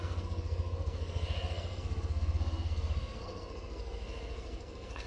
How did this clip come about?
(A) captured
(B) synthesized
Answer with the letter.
B